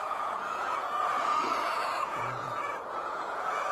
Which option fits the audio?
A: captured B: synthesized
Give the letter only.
B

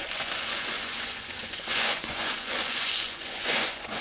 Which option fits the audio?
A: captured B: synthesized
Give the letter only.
B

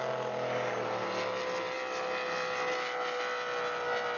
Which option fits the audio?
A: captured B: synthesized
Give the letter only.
A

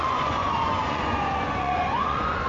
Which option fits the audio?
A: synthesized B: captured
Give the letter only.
A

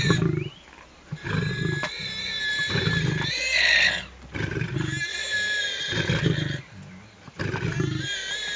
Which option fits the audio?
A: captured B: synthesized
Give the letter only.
A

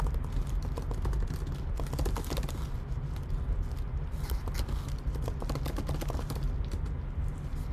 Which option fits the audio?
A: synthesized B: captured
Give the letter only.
B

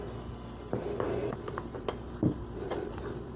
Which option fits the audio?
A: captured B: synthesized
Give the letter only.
A